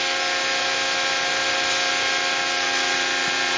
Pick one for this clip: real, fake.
real